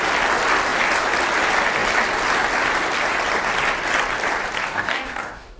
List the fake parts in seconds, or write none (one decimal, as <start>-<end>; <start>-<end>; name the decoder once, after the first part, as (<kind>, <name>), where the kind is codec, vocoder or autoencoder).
4.6-5.6 (codec, DAC)